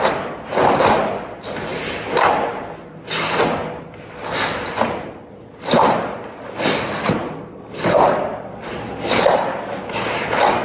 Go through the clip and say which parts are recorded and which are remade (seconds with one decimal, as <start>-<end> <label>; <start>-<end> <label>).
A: 0.0-10.6 recorded